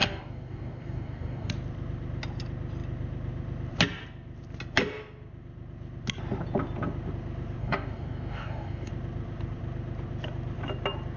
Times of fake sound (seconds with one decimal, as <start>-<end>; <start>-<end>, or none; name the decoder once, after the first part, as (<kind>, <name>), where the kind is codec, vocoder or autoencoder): 0.0-1.5 (codec, DAC); 7.6-8.9